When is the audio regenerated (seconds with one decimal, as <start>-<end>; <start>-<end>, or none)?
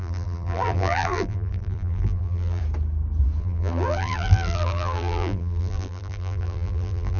0.0-2.6; 3.4-7.2